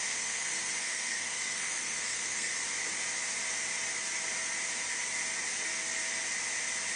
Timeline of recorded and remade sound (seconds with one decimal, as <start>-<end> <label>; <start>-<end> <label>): 0.0-2.5 remade; 2.5-7.0 recorded